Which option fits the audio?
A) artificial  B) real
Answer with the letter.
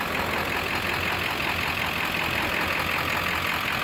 B